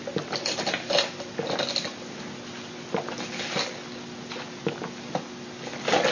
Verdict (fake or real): real